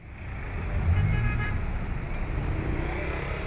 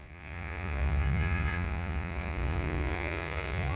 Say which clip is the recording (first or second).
first